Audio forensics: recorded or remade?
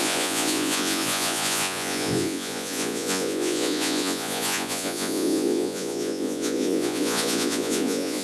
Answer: remade